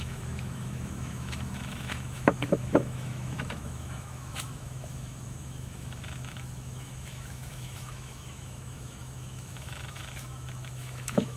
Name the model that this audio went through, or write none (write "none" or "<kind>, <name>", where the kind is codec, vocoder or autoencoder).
autoencoder, DAC-VAE